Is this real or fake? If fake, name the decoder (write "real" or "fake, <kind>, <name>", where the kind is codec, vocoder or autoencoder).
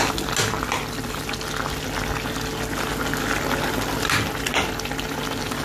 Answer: real